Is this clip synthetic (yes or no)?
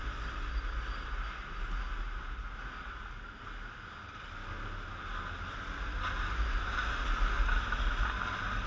no